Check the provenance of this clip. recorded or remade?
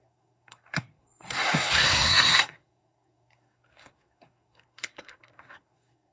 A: remade